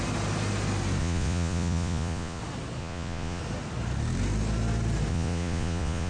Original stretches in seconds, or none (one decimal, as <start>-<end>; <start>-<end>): 0.0-1.0; 2.4-2.8; 3.4-5.1